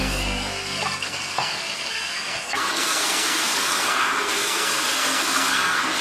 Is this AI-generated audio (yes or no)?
yes